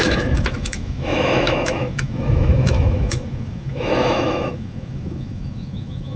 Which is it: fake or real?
fake